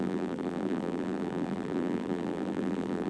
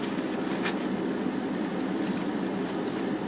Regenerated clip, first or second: first